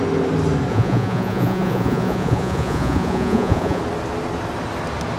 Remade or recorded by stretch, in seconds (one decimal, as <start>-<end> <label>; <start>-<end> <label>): 0.0-0.7 recorded; 0.7-3.8 remade; 3.8-5.2 recorded